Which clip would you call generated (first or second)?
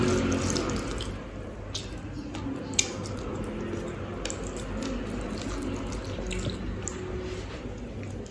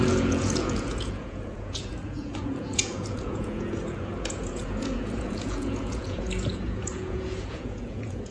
second